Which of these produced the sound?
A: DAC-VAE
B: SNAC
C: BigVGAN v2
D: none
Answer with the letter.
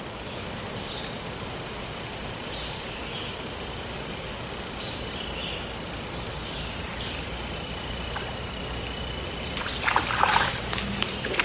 C